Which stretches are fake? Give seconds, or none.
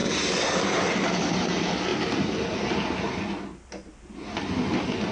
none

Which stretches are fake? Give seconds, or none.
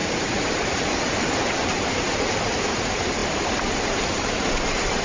none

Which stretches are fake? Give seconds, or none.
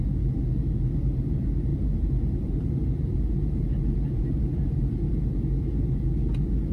1.7-5.2 (vocoder, BigVGAN v2)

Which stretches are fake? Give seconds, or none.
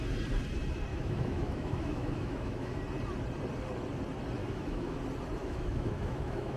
0.9-2.8 (autoencoder, DAC-VAE); 4.4-5.0; 5.4-6.6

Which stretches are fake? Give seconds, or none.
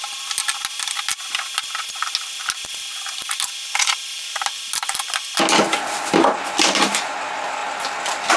none